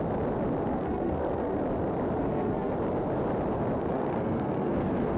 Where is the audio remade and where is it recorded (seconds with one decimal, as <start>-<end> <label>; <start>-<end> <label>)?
0.0-0.7 recorded; 0.7-1.6 remade; 1.6-2.2 recorded; 2.2-2.7 remade; 2.7-3.8 recorded; 3.8-5.2 remade